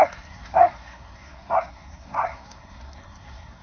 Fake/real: fake